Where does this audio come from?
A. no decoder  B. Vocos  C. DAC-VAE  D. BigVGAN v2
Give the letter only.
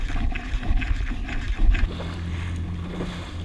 A